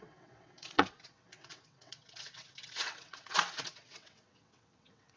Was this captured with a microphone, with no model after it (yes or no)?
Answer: no